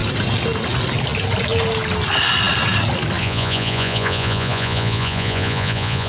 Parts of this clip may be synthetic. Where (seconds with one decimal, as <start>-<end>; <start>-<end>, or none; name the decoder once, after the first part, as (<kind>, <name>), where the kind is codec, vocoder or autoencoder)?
3.2-6.1 (vocoder, Vocos)